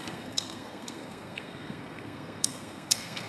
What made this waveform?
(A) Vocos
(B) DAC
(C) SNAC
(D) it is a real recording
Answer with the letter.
C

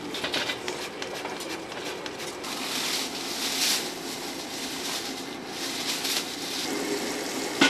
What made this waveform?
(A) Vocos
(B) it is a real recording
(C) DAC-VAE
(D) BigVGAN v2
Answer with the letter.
B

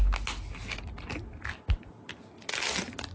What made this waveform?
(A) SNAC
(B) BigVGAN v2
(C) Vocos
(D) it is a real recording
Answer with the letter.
D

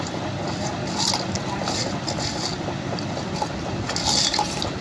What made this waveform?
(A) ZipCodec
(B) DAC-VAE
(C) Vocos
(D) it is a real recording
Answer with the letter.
D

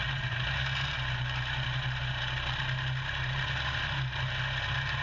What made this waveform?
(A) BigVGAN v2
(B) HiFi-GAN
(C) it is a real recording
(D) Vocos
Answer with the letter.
C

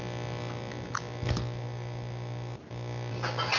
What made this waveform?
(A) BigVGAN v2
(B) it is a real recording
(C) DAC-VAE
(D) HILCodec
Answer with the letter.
B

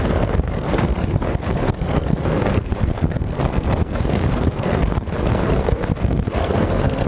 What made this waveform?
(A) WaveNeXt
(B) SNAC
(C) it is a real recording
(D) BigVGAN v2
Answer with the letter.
B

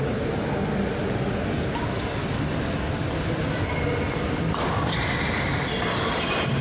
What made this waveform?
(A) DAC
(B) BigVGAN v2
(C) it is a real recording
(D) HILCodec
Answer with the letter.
C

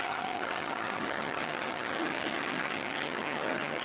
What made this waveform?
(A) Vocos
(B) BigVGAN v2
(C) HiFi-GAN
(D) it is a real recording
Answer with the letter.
C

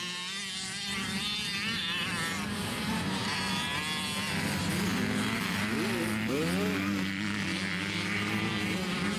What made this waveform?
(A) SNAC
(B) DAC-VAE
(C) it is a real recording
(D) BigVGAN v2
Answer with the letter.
C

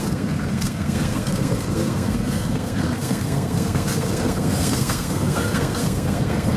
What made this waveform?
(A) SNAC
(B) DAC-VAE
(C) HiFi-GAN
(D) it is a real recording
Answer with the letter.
A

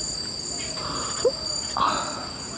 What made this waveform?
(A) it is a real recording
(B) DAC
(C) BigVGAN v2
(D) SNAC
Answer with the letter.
A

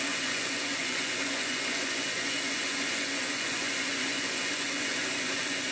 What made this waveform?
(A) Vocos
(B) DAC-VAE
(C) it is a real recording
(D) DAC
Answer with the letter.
A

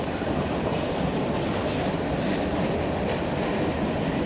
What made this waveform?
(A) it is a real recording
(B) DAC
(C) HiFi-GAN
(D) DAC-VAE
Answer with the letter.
A